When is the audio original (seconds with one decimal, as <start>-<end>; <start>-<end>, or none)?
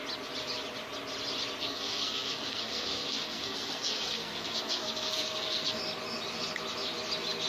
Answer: 0.0-1.6; 5.8-7.5